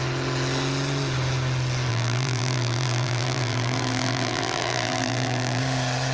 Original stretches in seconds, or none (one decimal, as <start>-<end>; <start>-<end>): 0.0-1.9; 5.6-6.1